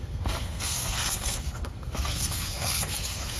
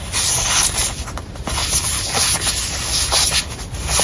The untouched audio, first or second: second